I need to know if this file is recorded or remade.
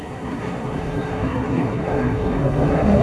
remade